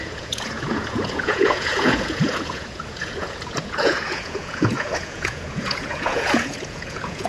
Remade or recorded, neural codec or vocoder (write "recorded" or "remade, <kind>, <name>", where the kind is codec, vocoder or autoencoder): remade, vocoder, Vocos